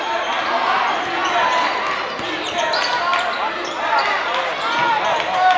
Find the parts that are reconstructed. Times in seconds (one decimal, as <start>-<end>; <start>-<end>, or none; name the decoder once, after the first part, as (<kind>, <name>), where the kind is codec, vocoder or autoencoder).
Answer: none